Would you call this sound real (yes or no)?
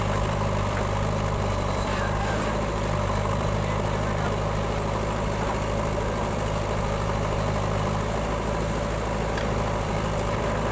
no